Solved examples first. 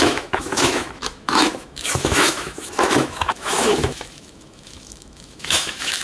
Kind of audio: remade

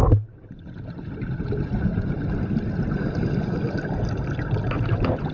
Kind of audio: recorded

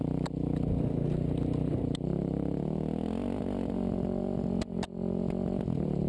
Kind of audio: recorded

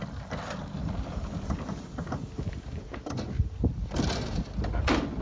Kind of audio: recorded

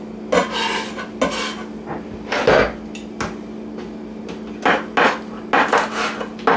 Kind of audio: recorded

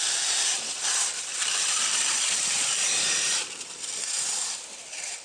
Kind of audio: remade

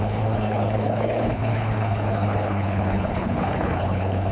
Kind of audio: remade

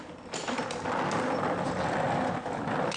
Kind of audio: recorded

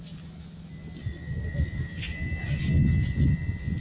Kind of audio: recorded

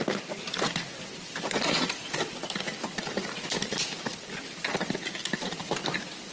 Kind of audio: recorded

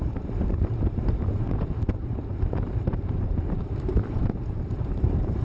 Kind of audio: remade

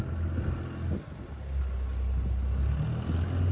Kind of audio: recorded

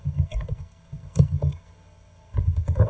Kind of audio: remade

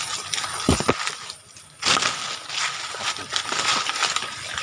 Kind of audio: recorded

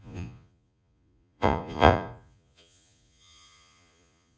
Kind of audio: remade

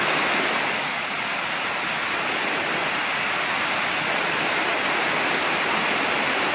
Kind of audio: recorded